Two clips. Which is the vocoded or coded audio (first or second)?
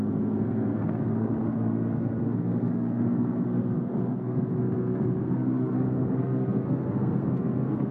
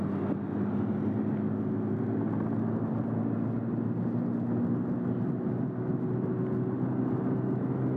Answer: first